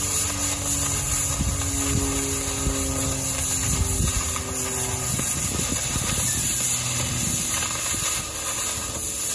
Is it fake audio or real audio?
real